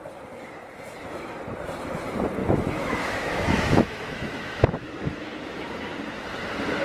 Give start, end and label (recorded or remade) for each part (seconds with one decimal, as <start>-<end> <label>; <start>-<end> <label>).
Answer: 0.0-2.4 recorded; 2.4-5.7 remade; 5.7-6.8 recorded